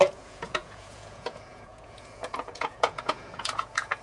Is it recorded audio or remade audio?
remade